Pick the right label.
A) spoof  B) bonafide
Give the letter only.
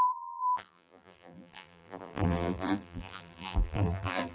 A